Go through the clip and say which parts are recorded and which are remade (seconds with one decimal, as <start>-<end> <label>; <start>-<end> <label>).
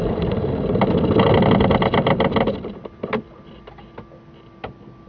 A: 0.0-5.1 recorded